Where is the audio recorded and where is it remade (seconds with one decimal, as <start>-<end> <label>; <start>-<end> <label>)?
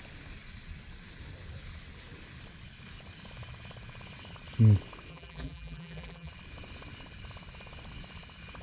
0.0-5.1 recorded; 5.1-6.3 remade; 6.3-8.6 recorded